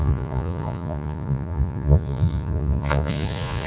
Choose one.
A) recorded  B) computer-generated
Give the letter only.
B